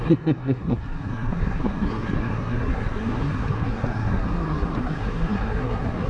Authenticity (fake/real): fake